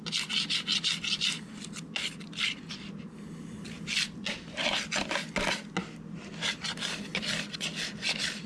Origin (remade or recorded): recorded